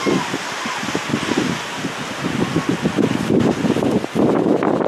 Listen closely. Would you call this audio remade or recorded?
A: recorded